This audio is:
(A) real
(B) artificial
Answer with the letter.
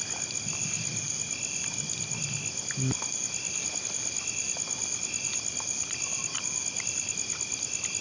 A